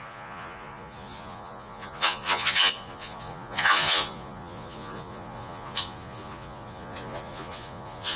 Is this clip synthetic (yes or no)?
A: yes